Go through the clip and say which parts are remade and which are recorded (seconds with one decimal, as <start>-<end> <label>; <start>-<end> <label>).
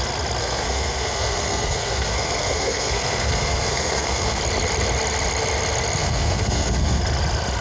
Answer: 0.0-0.4 recorded; 0.4-4.4 remade; 4.4-6.0 recorded; 6.0-7.0 remade; 7.0-7.6 recorded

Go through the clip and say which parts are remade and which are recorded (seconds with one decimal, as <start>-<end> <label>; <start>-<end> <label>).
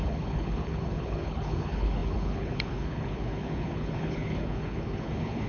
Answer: 0.0-5.5 remade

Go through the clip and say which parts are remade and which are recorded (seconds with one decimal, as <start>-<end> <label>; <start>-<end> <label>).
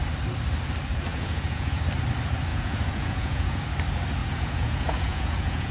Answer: 0.0-1.1 recorded; 1.1-1.8 remade; 1.8-2.5 recorded; 2.5-3.6 remade; 3.6-4.2 recorded; 4.2-5.7 remade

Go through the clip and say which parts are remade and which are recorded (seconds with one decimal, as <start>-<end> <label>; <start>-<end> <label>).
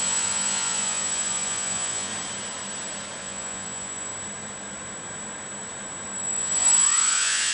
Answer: 0.0-2.1 remade; 2.1-3.2 recorded; 3.2-4.1 remade; 4.1-6.2 recorded; 6.2-7.5 remade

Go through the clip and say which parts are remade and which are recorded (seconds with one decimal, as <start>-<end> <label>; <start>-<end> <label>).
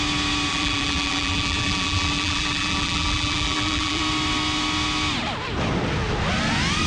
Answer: 0.0-0.5 recorded; 0.5-4.0 remade; 4.0-6.9 recorded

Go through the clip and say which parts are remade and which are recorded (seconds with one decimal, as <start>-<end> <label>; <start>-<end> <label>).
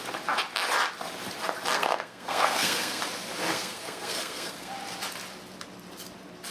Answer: 0.0-1.7 recorded; 1.7-3.0 remade; 3.0-3.5 recorded; 3.5-4.7 remade; 4.7-6.5 recorded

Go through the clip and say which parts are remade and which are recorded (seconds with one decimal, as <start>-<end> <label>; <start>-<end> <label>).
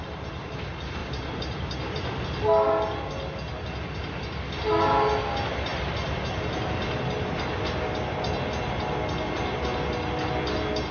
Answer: 0.0-10.9 recorded